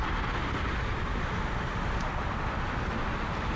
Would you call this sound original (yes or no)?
yes